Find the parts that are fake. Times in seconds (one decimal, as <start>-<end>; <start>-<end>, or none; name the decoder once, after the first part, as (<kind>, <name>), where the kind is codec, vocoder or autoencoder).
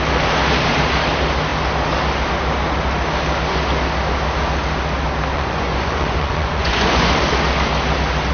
5.3-7.2 (vocoder, Vocos)